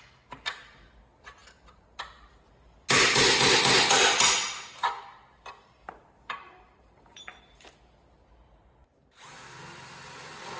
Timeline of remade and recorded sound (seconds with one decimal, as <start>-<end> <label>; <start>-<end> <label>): 0.0-10.6 recorded